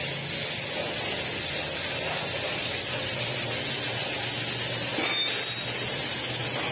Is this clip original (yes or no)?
yes